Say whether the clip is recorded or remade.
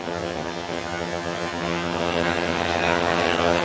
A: remade